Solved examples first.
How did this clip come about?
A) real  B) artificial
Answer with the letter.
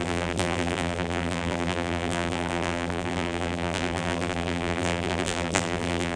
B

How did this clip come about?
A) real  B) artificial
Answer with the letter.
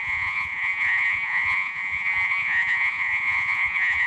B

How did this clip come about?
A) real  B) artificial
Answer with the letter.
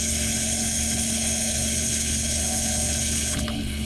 B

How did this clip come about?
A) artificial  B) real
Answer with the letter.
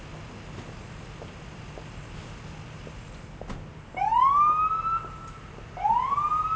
B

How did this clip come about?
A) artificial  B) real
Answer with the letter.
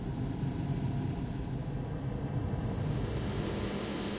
B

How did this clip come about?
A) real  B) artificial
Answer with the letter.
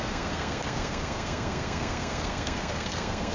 B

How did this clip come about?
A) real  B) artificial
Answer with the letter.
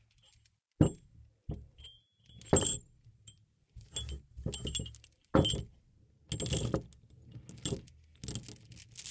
A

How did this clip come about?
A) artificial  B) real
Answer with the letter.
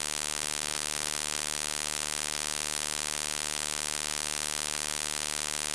B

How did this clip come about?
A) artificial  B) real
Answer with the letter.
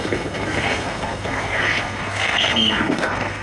A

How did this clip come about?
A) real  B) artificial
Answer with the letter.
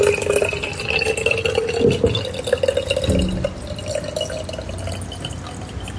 A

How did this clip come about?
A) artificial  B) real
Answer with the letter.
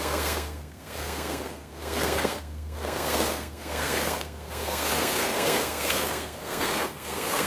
A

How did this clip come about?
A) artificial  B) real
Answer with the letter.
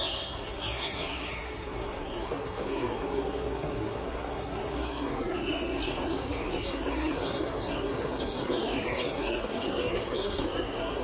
A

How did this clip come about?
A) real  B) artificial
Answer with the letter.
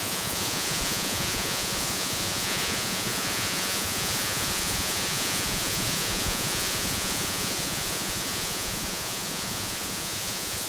B